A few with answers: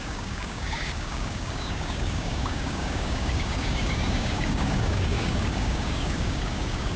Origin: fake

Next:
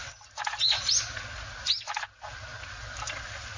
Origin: real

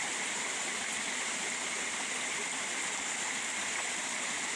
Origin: real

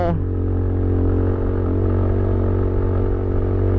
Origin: real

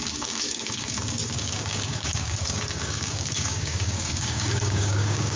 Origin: fake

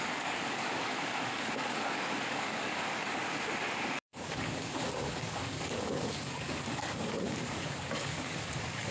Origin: fake